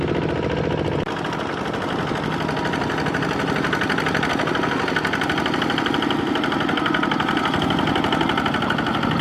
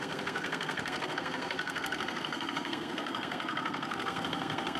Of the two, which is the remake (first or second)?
second